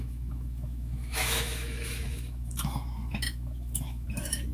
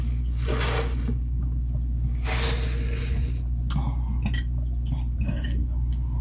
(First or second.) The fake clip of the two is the first